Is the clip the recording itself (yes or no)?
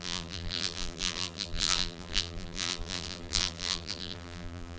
no